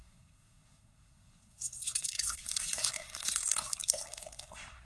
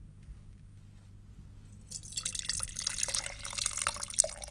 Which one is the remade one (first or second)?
first